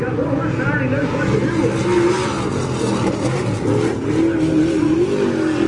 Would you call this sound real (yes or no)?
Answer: yes